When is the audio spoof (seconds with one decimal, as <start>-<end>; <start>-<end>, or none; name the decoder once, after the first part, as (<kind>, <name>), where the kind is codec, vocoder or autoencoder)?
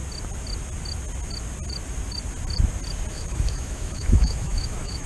3.1-5.1 (autoencoder, DAC-VAE)